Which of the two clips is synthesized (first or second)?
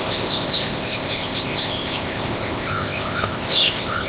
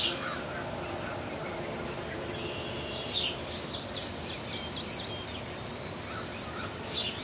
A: first